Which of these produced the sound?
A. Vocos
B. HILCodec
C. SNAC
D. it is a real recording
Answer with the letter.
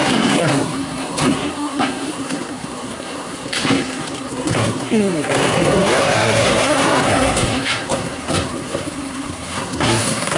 C